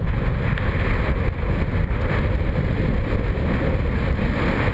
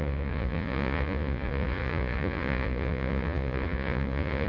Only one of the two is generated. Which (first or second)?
second